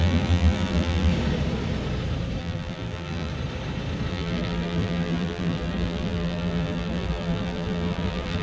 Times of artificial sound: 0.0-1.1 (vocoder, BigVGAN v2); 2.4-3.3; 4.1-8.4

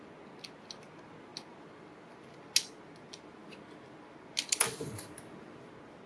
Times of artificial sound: none

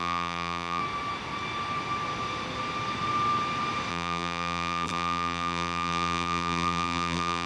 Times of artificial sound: 0.0-0.8 (vocoder, BigVGAN v2); 3.9-7.5

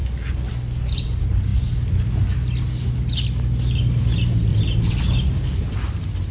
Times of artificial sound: 4.5-5.0 (vocoder, BigVGAN v2)

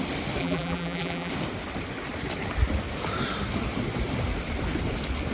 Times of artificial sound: 0.4-1.3 (vocoder, BigVGAN v2)

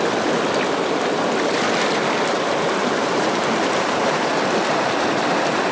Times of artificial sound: 2.8-4.3 (vocoder, BigVGAN v2)